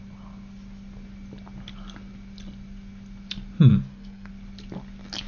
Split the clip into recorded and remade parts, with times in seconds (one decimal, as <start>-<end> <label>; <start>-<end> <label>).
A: 0.0-3.7 recorded; 3.7-4.3 remade; 4.3-5.3 recorded